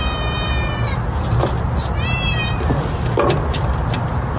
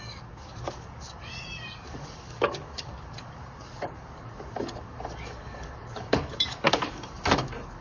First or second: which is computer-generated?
second